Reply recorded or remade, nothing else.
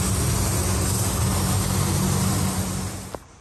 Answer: recorded